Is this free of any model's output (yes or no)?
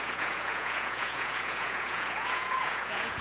no